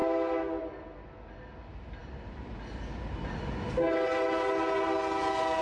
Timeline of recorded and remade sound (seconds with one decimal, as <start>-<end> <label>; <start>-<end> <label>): 0.0-5.6 recorded